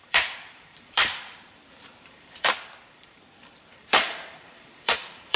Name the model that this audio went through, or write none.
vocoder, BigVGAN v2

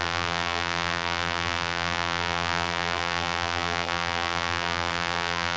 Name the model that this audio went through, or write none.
vocoder, BigVGAN v2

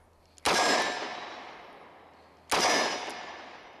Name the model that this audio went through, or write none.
none